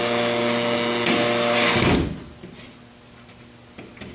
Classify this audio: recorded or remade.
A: recorded